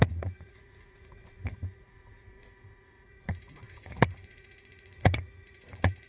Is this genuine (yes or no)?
no